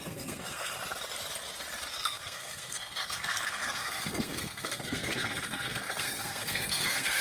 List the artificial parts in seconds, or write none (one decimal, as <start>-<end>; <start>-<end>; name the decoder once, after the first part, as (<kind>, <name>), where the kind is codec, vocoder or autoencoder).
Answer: 0.0-0.7 (codec, SNAC); 1.9-7.2